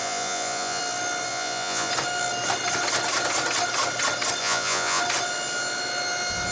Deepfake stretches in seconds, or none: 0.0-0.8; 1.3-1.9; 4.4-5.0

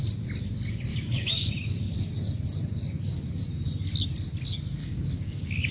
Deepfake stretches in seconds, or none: 0.9-1.5; 4.8-5.7

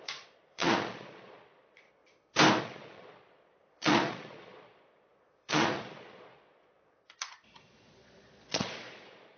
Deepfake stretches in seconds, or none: 0.0-2.0; 2.6-9.4

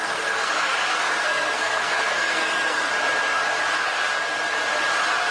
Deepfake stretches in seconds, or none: 0.0-2.9

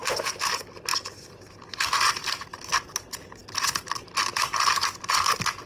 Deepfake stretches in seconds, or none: none

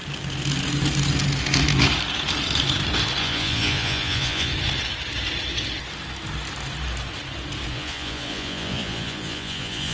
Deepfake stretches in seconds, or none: 3.2-4.5; 7.7-9.9

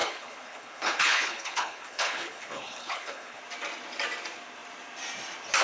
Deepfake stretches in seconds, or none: 0.0-3.4

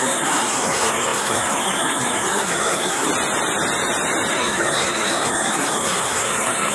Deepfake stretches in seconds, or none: 0.0-3.1; 4.3-6.7